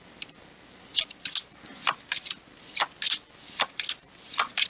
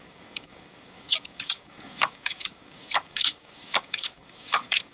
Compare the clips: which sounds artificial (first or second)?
second